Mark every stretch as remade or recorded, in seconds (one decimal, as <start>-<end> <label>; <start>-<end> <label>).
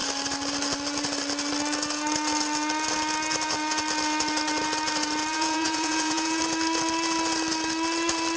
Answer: 0.0-5.3 recorded; 5.3-6.4 remade; 6.4-8.4 recorded